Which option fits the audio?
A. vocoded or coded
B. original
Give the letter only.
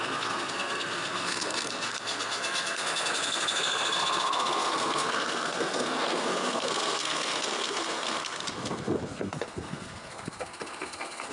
A